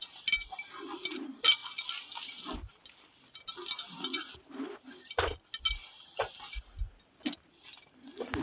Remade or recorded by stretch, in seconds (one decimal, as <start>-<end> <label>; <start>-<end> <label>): 0.0-8.4 recorded